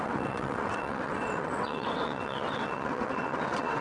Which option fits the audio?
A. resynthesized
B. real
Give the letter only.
A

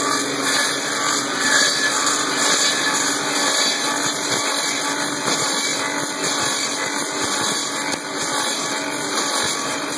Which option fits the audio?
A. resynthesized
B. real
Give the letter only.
B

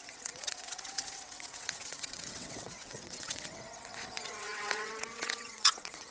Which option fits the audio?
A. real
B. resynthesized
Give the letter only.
B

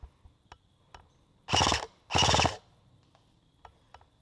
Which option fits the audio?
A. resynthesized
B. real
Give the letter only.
B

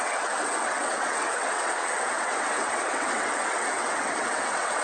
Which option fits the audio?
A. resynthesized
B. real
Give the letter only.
A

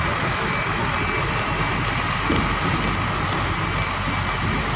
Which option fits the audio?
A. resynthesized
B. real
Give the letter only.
B